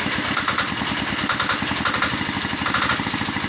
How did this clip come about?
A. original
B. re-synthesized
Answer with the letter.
A